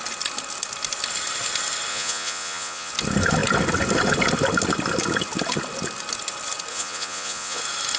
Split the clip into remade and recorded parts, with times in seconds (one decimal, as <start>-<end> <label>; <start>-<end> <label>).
0.0-1.9 recorded; 1.9-2.9 remade; 2.9-6.7 recorded; 6.7-7.6 remade; 7.6-8.0 recorded